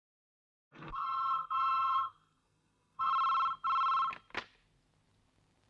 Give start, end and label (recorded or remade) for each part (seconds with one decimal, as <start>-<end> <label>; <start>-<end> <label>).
0.0-3.1 remade; 3.1-5.7 recorded